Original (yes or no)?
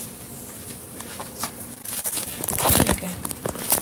no